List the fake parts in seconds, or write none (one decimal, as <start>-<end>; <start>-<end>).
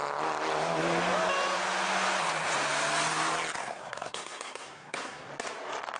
3.6-5.3